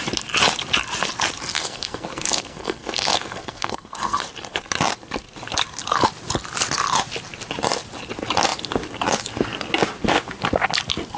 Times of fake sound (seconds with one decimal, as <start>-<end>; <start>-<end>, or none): 1.5-4.2